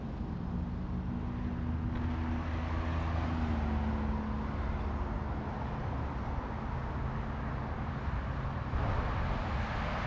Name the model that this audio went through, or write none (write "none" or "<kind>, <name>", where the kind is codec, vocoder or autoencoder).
none